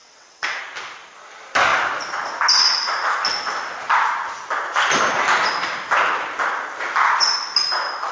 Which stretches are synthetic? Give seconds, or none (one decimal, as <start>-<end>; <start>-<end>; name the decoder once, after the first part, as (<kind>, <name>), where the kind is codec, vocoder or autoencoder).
0.0-0.6 (vocoder, WaveNeXt)